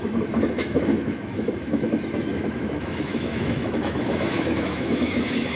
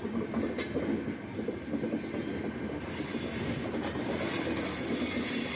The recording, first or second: second